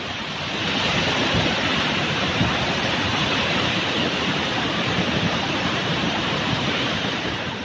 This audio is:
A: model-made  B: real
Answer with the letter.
A